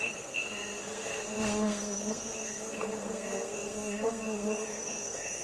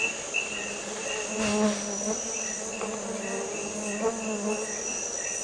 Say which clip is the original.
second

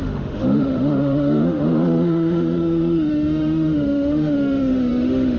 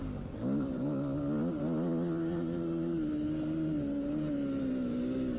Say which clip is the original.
second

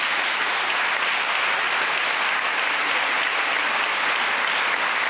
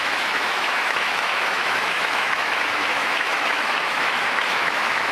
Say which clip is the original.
first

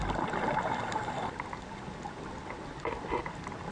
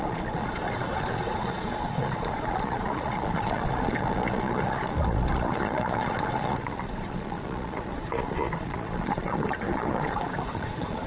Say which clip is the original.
first